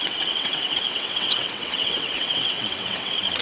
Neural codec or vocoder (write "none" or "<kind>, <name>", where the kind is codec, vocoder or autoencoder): vocoder, WaveNeXt